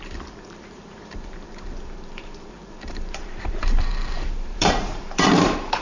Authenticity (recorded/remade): remade